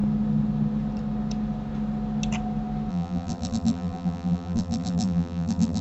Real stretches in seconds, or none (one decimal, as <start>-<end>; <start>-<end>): 0.0-2.9